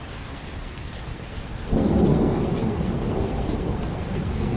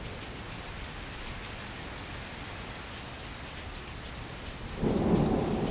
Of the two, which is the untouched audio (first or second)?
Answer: second